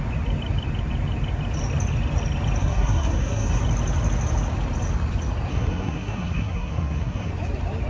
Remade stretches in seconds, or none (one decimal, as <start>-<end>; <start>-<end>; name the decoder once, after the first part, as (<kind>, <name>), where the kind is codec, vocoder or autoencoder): 2.6-3.6 (codec, SNAC); 5.5-7.3